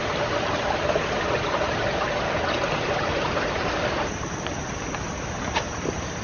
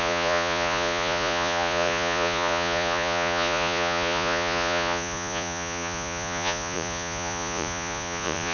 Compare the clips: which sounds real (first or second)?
first